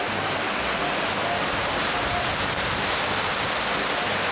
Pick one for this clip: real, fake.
real